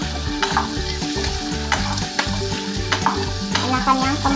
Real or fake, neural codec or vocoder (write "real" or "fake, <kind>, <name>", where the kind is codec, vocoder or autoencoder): real